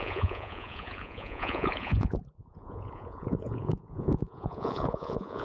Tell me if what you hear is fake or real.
fake